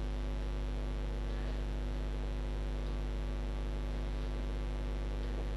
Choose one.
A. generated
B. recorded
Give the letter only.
B